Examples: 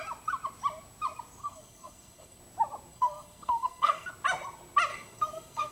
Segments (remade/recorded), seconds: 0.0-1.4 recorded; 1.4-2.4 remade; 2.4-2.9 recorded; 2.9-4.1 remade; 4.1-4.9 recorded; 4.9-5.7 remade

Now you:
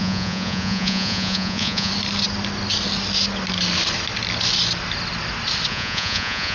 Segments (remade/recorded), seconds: 0.0-1.9 remade; 1.9-5.7 recorded; 5.7-6.5 remade

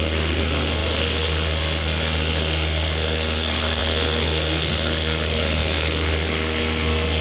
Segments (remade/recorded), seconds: 0.0-7.2 remade